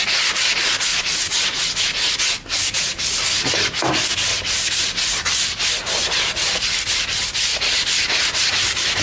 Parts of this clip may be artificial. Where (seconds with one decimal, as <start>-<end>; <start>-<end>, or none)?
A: 0.0-0.9; 1.8-5.8; 6.5-7.5; 8.5-9.0